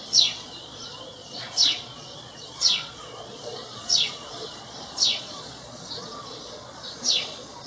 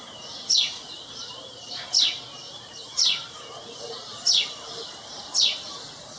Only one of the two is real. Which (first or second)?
second